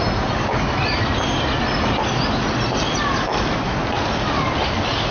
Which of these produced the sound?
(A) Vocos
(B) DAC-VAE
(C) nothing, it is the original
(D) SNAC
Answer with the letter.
C